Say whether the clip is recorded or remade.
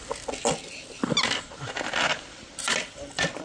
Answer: recorded